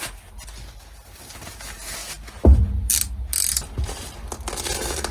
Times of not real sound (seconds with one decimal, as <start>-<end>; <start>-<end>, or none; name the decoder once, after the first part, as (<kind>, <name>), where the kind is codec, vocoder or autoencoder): none

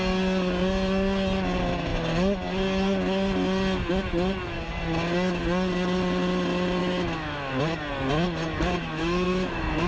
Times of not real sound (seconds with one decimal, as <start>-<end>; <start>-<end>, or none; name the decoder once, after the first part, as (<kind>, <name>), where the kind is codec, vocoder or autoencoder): 6.8-7.6 (autoencoder, DAC-VAE); 8.8-9.9

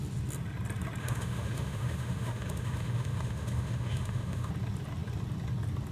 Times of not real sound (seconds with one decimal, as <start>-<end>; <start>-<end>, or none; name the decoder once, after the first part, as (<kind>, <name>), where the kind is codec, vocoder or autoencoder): 1.0-4.5 (autoencoder, DAC-VAE)

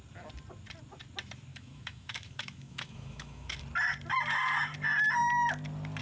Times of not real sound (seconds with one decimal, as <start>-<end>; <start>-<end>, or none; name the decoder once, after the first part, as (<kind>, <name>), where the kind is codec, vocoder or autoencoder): 1.5-3.6 (autoencoder, DAC-VAE)

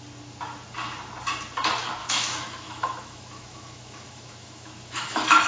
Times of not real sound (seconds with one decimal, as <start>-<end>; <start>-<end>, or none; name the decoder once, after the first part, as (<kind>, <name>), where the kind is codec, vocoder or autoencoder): 2.0-5.5 (autoencoder, DAC-VAE)